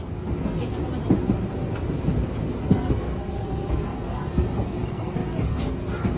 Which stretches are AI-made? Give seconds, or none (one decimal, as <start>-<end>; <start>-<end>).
0.0-0.8; 2.6-6.2